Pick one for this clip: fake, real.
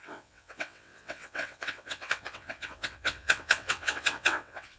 fake